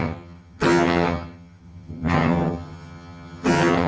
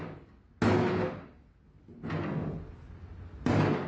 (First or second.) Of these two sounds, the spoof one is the first